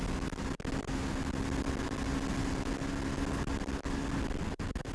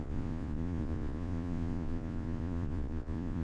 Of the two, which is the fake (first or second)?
second